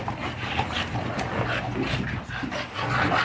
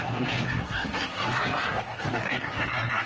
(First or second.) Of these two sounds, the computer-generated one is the second